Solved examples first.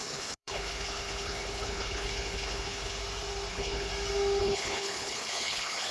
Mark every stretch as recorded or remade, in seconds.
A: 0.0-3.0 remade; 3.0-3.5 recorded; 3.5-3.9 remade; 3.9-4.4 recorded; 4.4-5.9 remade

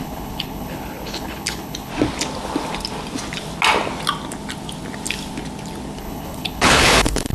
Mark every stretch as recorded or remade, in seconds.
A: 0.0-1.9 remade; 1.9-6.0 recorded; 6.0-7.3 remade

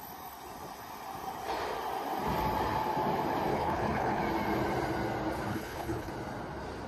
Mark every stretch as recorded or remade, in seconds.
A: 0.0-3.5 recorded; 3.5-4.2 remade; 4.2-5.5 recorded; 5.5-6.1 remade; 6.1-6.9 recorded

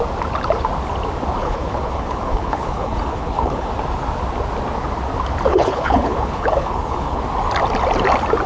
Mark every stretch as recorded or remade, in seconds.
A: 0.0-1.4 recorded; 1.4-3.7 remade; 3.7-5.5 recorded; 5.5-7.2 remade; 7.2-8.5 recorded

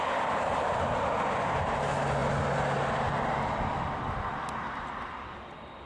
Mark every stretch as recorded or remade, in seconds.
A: 0.0-5.9 recorded

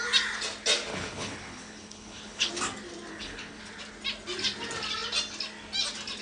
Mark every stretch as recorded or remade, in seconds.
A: 0.0-0.9 recorded; 0.9-2.5 remade; 2.5-3.1 recorded; 3.1-3.6 remade; 3.6-6.2 recorded

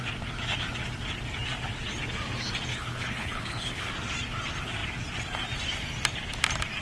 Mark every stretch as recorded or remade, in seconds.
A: 0.0-2.7 recorded; 2.7-3.9 remade; 3.9-6.8 recorded